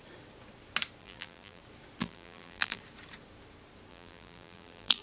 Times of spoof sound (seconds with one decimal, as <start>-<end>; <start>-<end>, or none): 1.0-1.6; 2.0-2.8; 3.9-5.0